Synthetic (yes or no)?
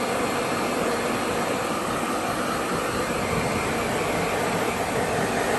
no